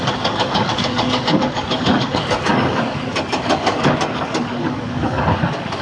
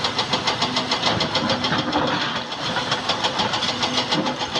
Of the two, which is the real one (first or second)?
second